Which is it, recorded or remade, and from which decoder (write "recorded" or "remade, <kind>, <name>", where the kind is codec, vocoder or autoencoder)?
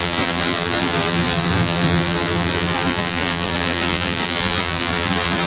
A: remade, vocoder, BigVGAN v2